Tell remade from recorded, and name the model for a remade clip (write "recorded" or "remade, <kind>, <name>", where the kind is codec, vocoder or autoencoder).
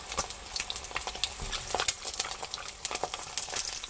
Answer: recorded